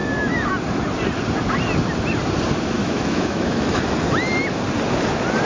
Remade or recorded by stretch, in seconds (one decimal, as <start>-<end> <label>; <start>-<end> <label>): 0.0-0.5 remade; 0.5-2.8 recorded; 2.8-3.8 remade; 3.8-5.5 recorded